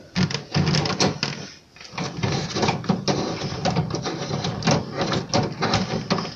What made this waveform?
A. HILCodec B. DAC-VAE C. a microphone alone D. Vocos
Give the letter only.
C